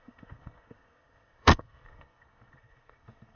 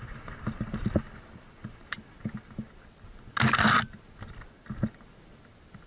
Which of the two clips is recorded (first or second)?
second